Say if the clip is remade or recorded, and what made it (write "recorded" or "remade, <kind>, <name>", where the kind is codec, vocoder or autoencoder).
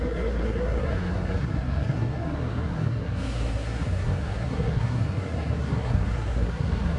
remade, codec, SNAC